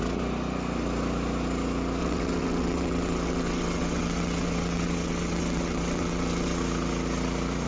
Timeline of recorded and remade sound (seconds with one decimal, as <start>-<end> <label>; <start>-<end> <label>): 0.0-2.0 recorded; 2.0-6.6 remade; 6.6-7.7 recorded